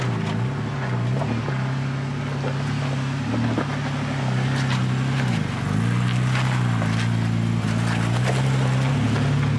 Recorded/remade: recorded